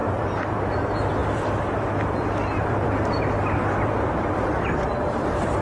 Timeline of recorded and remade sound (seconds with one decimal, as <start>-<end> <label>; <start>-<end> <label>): 0.0-0.7 remade; 0.7-1.2 recorded; 1.2-4.3 remade; 4.3-5.6 recorded